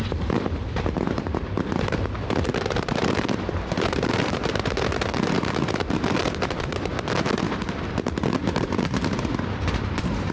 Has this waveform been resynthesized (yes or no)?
yes